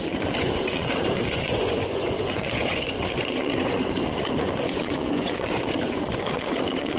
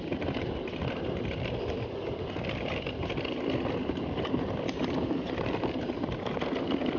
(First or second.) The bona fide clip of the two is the second